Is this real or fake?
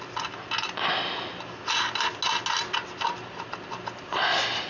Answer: real